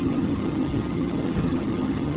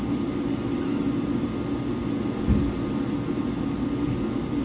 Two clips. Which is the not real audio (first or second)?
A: first